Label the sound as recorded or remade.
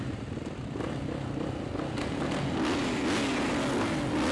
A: recorded